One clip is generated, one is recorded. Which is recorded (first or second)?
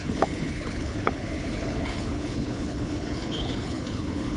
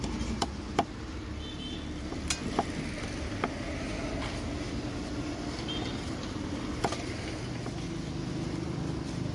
second